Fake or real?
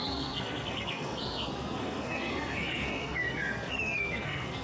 fake